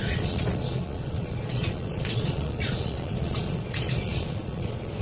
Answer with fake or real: fake